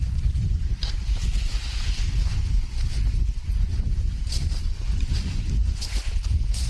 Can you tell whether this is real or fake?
fake